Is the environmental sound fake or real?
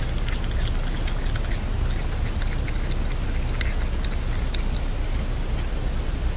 real